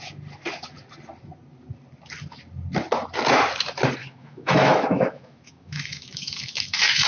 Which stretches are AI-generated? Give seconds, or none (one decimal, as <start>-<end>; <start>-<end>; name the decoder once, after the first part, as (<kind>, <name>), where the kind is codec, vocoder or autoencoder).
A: 4.0-7.1 (autoencoder, DAC-VAE)